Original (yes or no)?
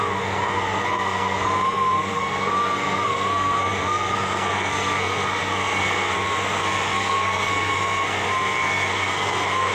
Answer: no